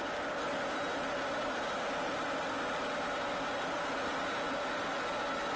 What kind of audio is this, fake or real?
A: real